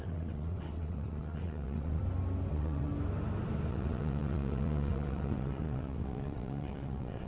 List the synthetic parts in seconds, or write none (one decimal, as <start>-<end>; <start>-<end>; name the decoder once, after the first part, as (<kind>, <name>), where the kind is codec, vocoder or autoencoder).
0.0-2.0 (vocoder, WaveNeXt); 2.5-2.9; 3.7-7.3